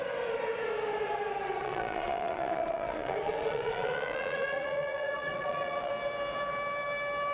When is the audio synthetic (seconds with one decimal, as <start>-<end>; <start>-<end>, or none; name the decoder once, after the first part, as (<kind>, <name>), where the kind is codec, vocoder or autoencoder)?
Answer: 1.6-5.9 (vocoder, Vocos)